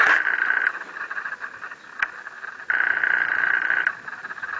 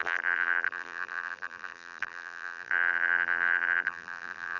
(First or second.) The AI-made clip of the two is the second